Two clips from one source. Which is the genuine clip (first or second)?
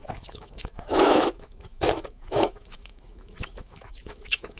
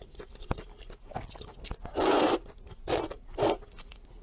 second